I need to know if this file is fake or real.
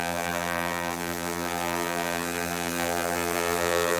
fake